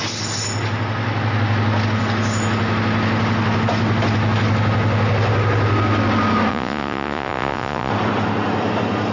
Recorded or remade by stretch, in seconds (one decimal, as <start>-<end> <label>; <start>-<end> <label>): 0.0-6.5 recorded; 6.5-7.9 remade; 7.9-9.1 recorded